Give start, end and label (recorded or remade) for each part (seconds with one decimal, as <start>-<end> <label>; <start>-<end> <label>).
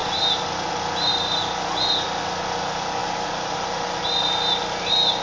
0.0-5.2 recorded